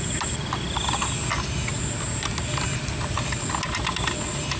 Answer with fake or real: real